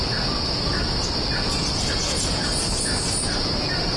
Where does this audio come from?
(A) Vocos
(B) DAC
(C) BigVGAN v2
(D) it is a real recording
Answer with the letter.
D